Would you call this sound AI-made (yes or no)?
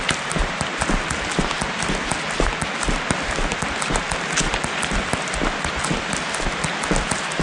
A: no